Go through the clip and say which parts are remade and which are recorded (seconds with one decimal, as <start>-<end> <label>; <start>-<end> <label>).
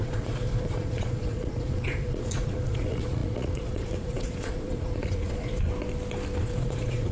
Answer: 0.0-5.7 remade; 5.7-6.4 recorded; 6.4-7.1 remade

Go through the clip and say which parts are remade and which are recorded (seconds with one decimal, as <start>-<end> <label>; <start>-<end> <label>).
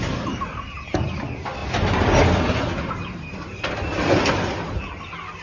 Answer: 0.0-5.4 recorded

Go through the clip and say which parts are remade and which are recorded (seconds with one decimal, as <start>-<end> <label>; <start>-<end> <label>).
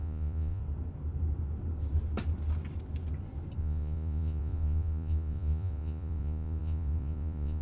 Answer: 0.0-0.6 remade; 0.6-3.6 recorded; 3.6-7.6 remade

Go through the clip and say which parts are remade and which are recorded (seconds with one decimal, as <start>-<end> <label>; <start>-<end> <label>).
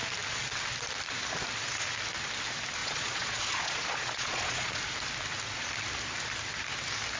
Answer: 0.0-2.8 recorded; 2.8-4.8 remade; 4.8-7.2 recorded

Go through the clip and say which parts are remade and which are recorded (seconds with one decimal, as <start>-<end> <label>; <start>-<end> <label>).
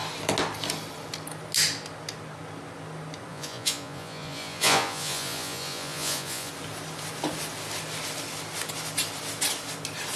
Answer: 0.0-3.3 recorded; 3.3-6.5 remade; 6.5-10.2 recorded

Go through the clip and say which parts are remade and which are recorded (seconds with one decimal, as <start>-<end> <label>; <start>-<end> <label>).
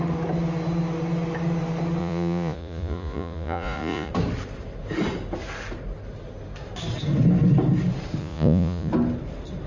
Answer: 0.0-2.0 recorded; 2.0-4.1 remade; 4.1-8.2 recorded; 8.2-8.9 remade; 8.9-9.7 recorded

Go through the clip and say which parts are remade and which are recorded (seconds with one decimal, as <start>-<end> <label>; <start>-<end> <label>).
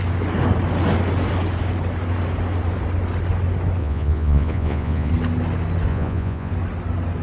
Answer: 0.0-3.8 recorded; 3.8-5.1 remade; 5.1-5.9 recorded; 5.9-6.5 remade; 6.5-7.2 recorded